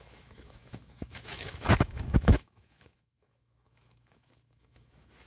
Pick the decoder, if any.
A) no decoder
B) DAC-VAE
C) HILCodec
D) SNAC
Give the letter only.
B